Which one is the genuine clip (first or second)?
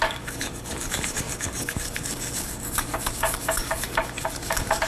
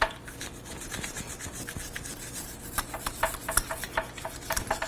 second